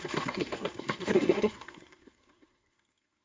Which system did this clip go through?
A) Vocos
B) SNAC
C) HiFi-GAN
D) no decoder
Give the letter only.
B